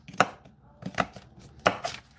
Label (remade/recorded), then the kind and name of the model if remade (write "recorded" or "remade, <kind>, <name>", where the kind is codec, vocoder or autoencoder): recorded